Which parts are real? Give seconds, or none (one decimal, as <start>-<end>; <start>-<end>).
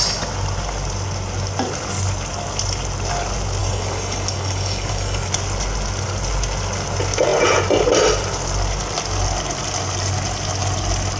0.0-3.6; 5.3-11.2